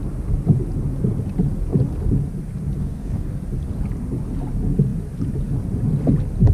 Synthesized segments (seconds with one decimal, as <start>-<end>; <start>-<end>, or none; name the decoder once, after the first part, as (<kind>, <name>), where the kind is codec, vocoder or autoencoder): 2.8-3.3 (codec, DAC)